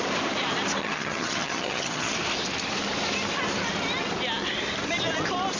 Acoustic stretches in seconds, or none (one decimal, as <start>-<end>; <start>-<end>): 0.0-0.8; 2.1-5.6